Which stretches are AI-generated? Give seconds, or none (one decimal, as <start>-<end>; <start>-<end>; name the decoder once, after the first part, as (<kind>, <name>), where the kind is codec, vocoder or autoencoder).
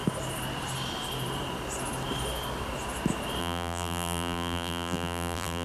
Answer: 3.4-5.6 (vocoder, BigVGAN v2)